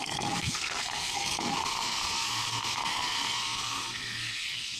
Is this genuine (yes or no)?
no